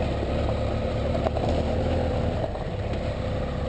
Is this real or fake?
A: real